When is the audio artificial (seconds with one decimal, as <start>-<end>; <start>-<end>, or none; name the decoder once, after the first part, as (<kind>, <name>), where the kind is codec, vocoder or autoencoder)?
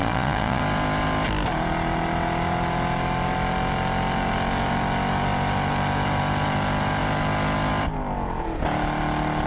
0.0-0.6 (vocoder, Vocos)